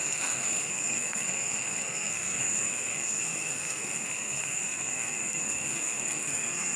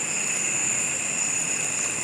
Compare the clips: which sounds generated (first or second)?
first